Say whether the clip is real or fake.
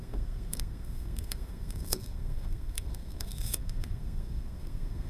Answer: fake